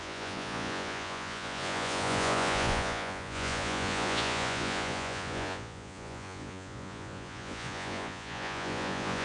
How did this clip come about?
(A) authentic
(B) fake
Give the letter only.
B